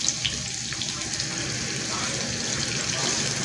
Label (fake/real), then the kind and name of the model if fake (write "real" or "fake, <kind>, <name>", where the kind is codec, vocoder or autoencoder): real